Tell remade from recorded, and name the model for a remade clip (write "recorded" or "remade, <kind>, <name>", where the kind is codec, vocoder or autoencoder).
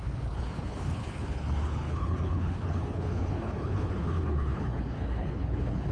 remade, codec, HILCodec